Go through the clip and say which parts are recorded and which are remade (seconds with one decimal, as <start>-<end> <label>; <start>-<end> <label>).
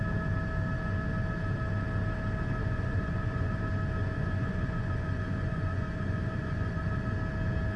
0.0-2.6 recorded; 2.6-3.6 remade; 3.6-4.0 recorded; 4.0-6.8 remade; 6.8-7.8 recorded